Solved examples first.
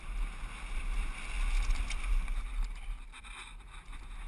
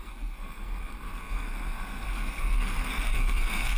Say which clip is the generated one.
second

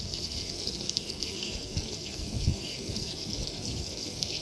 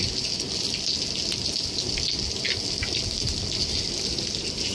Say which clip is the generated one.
first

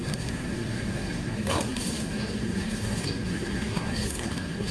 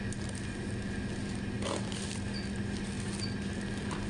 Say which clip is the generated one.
first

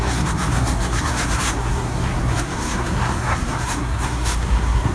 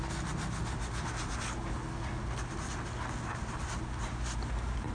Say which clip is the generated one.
first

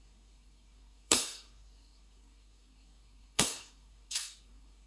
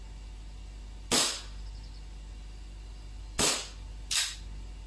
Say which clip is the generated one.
first